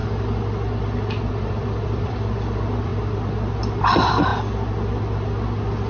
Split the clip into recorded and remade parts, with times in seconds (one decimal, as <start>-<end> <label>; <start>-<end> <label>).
0.0-1.3 recorded; 1.3-2.9 remade; 2.9-3.8 recorded; 3.8-4.3 remade; 4.3-5.9 recorded